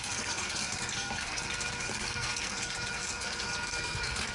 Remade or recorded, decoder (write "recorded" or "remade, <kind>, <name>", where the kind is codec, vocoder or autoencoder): remade, codec, SNAC